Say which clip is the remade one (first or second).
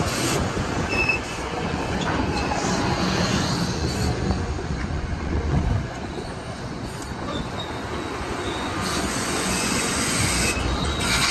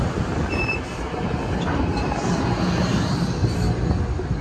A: first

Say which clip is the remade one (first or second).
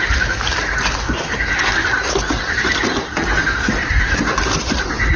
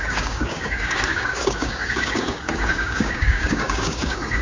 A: second